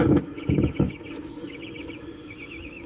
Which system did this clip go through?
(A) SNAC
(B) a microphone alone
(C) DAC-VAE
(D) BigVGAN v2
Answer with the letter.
C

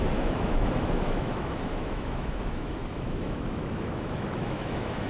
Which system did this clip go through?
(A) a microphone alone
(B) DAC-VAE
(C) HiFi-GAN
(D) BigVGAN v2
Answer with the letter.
B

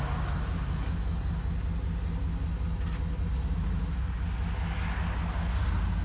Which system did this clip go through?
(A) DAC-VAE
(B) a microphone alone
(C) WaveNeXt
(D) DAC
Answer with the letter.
B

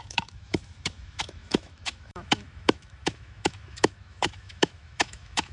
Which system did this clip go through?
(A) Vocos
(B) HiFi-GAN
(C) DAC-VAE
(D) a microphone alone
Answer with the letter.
C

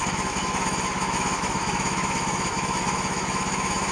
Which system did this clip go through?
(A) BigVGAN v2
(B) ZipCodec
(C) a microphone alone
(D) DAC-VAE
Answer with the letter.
D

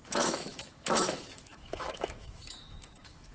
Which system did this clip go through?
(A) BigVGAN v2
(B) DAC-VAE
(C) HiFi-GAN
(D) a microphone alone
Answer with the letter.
B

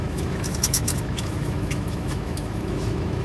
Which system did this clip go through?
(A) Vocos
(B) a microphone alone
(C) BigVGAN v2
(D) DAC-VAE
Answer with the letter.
D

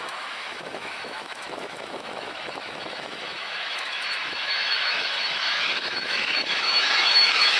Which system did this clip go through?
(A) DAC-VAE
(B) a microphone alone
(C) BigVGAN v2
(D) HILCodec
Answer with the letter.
A